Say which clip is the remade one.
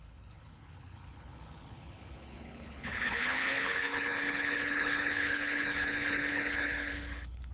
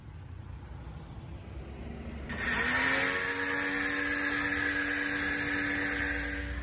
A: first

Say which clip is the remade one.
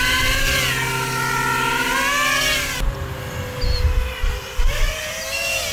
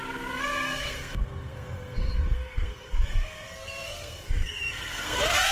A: second